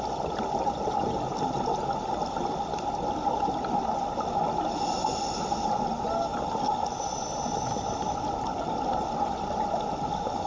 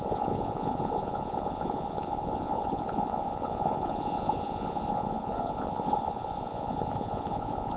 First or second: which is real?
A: first